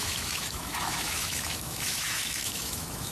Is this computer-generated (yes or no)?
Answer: yes